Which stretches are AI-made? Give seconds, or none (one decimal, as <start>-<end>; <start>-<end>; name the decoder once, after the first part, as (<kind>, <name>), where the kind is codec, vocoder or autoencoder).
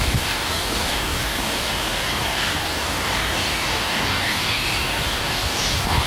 0.0-6.1 (codec, DAC)